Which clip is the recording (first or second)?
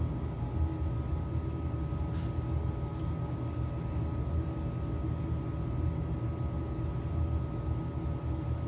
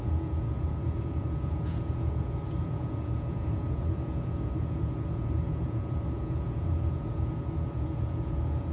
first